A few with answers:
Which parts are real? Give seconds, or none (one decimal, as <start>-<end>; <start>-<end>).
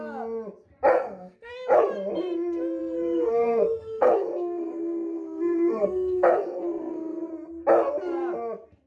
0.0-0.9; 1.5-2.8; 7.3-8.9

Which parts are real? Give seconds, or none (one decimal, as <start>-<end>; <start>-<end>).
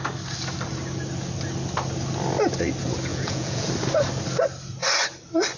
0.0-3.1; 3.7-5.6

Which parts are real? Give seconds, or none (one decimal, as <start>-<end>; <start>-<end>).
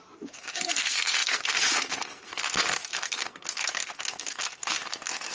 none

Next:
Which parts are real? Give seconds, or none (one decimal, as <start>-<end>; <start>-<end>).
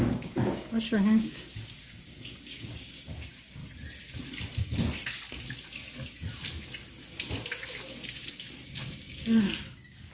3.6-8.3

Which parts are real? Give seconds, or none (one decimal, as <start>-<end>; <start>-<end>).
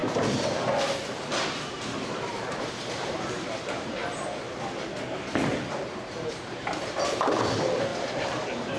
4.0-5.7; 7.9-8.8